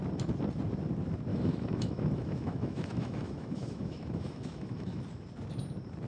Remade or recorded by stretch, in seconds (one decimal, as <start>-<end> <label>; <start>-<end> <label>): 0.0-1.3 recorded; 1.3-5.0 remade; 5.0-6.1 recorded